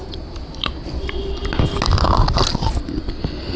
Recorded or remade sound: recorded